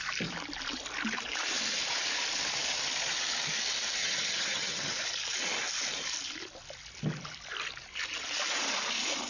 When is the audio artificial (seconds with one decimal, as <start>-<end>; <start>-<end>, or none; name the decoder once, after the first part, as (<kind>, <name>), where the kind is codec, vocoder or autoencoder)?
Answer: 4.0-4.9 (vocoder, HiFi-GAN)